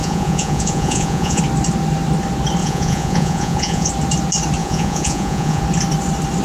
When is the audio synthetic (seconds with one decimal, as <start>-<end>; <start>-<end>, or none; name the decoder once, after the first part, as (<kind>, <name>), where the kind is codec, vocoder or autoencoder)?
0.0-1.4 (vocoder, Vocos); 2.6-3.9; 4.6-5.6